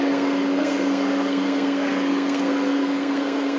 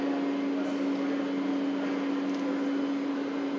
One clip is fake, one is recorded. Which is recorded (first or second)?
second